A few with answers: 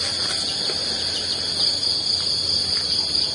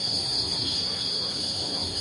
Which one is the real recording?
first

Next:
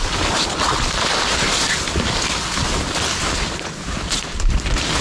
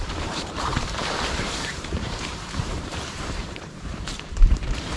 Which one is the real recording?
first